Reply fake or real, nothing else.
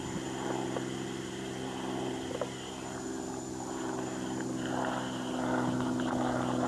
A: real